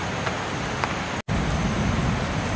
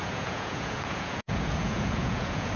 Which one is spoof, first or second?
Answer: second